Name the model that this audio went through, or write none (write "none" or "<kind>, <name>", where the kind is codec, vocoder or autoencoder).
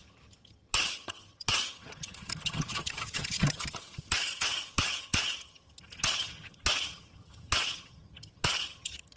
vocoder, HiFi-GAN